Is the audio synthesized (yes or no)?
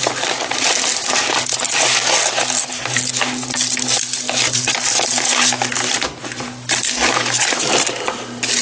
no